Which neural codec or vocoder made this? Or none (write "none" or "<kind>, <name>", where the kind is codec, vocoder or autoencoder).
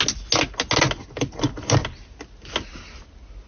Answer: none